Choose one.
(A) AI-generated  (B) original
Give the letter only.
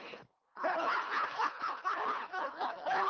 A